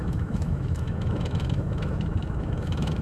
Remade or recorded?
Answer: remade